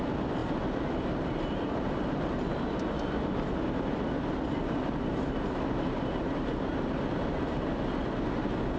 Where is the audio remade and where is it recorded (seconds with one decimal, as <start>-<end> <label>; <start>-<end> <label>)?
0.0-8.8 recorded